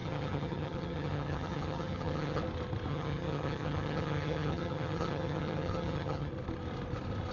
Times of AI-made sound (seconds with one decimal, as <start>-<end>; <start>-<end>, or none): 0.0-2.4; 2.9-6.3